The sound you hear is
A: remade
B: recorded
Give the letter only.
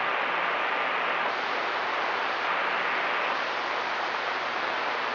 B